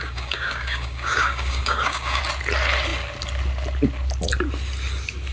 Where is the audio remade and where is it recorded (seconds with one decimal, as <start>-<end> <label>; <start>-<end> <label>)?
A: 0.0-2.2 remade; 2.2-5.3 recorded

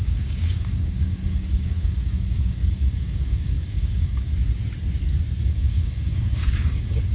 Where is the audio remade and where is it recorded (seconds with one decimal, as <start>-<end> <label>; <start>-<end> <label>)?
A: 0.0-4.3 remade; 4.3-5.4 recorded; 5.4-7.1 remade

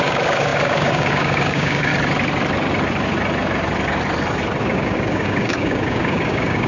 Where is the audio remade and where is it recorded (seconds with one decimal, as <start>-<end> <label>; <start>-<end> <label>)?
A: 0.0-1.9 remade; 1.9-4.6 recorded; 4.6-6.7 remade

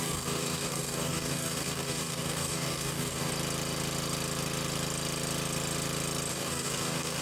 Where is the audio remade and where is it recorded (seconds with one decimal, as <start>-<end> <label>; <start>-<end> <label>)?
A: 0.0-3.3 remade; 3.3-6.3 recorded; 6.3-7.2 remade

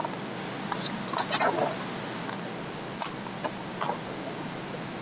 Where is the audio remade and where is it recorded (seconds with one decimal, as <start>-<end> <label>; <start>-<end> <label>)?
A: 0.0-5.0 recorded

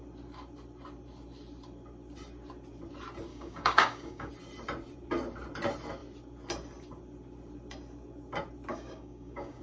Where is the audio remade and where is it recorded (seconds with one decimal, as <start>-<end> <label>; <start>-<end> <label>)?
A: 0.0-3.3 recorded; 3.3-4.3 remade; 4.3-8.7 recorded; 8.7-9.6 remade